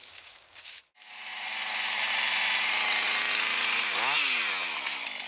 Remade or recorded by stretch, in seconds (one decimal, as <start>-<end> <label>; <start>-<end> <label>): 0.0-0.8 remade; 0.8-5.3 recorded